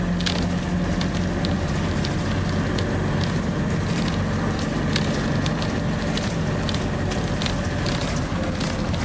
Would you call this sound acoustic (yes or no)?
yes